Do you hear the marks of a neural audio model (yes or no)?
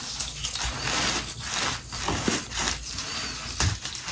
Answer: no